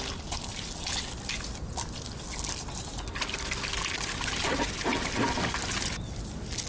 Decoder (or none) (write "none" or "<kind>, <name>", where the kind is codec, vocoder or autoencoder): none